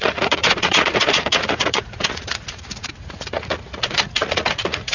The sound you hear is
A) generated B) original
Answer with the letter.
A